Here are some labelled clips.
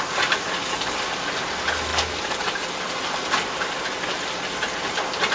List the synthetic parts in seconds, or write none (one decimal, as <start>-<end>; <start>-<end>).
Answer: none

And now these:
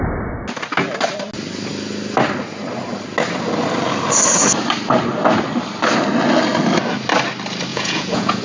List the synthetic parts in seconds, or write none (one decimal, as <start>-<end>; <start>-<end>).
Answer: 7.7-8.4

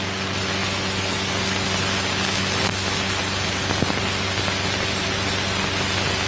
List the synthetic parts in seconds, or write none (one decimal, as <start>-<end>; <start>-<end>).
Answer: none

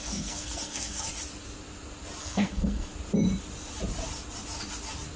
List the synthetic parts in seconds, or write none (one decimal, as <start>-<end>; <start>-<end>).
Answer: 0.0-1.1; 2.2-2.9

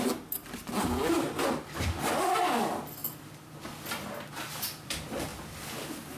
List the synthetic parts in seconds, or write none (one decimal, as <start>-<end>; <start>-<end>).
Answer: none